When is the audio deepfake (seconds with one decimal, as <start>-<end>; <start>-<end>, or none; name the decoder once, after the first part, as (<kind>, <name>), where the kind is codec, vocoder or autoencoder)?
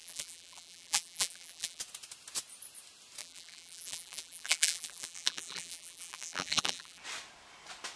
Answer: 0.0-1.8 (vocoder, BigVGAN v2); 3.2-7.0